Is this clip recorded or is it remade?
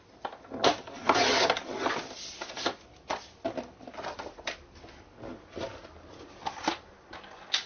recorded